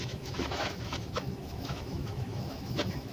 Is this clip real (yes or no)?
no